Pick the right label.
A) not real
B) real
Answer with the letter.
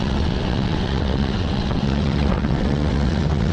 A